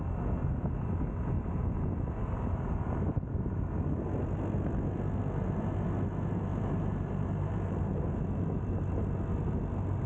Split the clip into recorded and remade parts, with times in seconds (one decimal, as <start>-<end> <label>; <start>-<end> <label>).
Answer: 0.0-6.5 recorded; 6.5-8.2 remade; 8.2-10.1 recorded

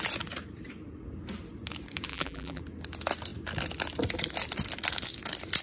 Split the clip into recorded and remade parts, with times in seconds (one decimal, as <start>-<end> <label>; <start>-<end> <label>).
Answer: 0.0-2.1 recorded; 2.1-2.6 remade; 2.6-5.6 recorded